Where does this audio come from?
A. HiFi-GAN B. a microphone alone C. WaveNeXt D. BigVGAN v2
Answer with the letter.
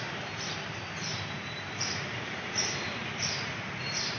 D